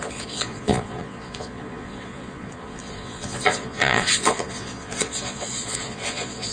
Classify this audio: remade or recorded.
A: remade